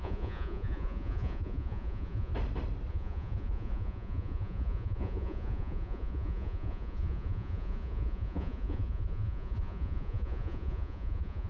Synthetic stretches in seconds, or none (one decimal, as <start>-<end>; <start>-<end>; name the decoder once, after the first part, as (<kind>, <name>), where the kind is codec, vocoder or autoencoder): 0.0-2.3 (vocoder, Vocos); 2.9-11.5